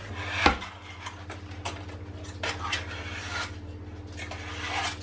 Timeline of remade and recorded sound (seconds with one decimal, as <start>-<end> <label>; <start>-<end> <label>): 0.0-5.0 recorded